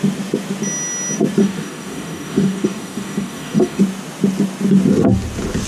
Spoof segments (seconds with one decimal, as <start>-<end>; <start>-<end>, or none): 1.4-3.8